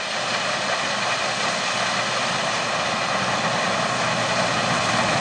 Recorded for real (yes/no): yes